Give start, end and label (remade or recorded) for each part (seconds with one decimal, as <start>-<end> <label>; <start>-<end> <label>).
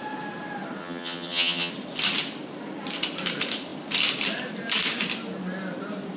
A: 0.0-0.8 recorded; 0.8-1.7 remade; 1.7-6.2 recorded